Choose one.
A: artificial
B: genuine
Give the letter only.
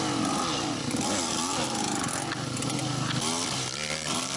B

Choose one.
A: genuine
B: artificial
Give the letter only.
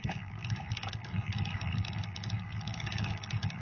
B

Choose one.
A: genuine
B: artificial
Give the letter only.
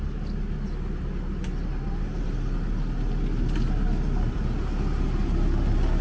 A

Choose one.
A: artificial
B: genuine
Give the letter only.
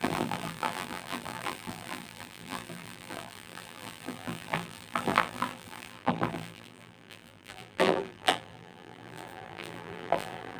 A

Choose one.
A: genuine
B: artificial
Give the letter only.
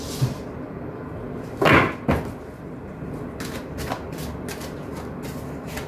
A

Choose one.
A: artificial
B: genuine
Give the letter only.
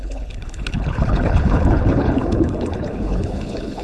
A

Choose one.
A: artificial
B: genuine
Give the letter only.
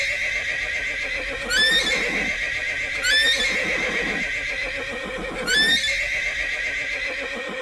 B